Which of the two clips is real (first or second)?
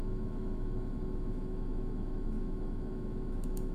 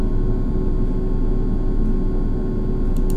second